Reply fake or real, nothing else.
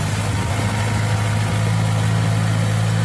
real